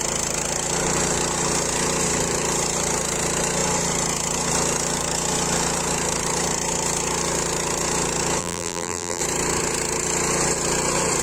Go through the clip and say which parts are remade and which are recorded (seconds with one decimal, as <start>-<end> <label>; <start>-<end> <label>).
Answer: 0.0-8.4 recorded; 8.4-9.2 remade; 9.2-11.2 recorded